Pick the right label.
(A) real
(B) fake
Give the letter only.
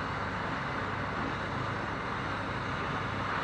A